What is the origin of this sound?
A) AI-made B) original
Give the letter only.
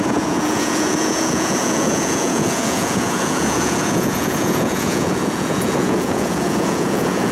A